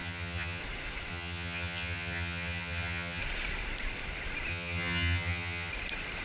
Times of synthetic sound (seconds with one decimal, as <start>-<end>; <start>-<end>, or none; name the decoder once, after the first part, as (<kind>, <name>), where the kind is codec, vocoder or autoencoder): 0.0-0.6 (vocoder, HiFi-GAN); 1.1-3.2; 4.5-5.7